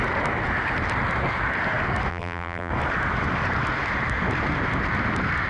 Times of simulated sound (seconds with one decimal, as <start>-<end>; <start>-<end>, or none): 2.1-2.7

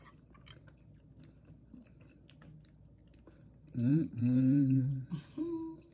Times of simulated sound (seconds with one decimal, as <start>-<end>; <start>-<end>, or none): 3.9-5.0

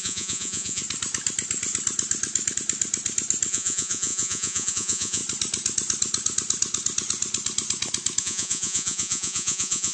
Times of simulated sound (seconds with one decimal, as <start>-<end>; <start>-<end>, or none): 0.0-0.8; 3.5-5.2; 8.2-9.9

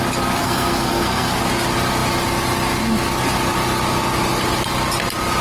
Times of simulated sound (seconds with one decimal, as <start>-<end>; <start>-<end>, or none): 0.4-1.4

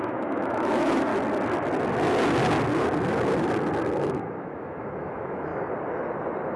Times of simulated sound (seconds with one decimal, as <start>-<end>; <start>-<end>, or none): 0.0-1.1; 4.0-5.5

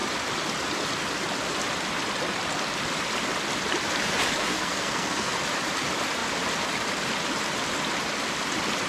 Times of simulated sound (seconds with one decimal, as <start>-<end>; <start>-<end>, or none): 4.4-5.3